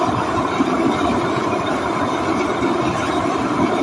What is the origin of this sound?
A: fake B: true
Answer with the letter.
A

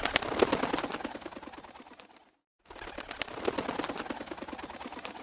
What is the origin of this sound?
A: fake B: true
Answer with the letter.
B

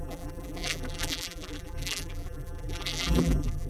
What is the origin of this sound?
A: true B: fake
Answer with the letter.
B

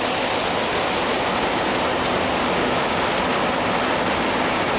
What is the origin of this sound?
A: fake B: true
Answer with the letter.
B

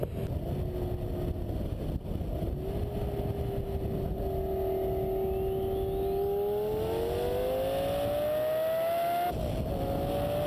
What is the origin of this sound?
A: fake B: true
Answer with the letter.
B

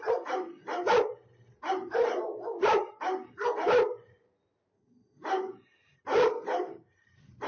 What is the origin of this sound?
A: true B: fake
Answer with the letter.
B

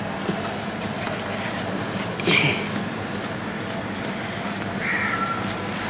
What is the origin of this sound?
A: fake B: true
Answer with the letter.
A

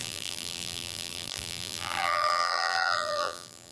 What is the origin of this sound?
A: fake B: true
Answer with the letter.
A